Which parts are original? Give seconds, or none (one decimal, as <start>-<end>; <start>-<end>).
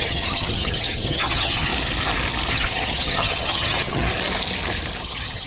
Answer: 1.7-2.5; 4.1-5.0